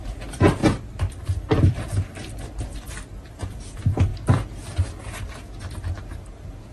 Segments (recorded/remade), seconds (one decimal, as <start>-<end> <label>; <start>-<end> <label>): 0.0-6.7 recorded